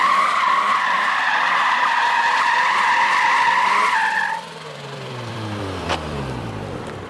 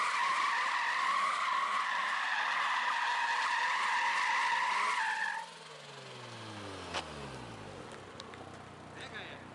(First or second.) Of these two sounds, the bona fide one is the second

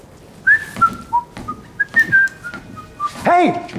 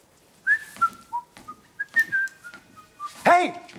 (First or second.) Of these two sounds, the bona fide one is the first